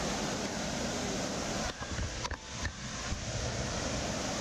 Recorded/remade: recorded